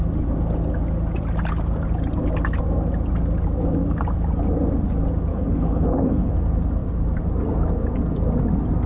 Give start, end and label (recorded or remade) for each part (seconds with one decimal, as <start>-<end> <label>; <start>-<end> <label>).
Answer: 0.0-5.3 recorded; 5.3-6.3 remade; 6.3-8.9 recorded